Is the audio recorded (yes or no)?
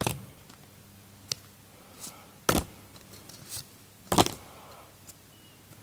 yes